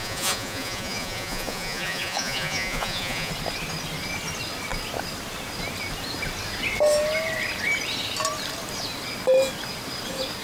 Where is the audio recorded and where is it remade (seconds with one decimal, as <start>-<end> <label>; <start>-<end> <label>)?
0.0-3.3 remade; 3.3-10.4 recorded